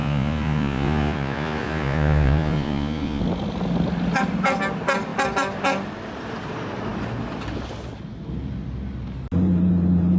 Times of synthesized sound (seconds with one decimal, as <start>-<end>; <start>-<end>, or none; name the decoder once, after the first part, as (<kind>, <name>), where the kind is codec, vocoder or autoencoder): 0.0-3.2 (vocoder, Vocos)